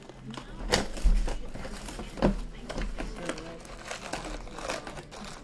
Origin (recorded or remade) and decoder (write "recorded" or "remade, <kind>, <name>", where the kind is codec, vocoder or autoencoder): recorded